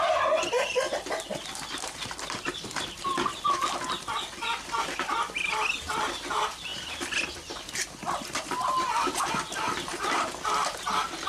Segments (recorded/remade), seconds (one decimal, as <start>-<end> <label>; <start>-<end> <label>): 0.0-11.3 remade